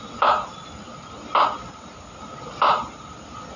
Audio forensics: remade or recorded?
recorded